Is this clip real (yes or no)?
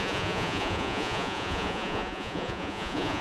no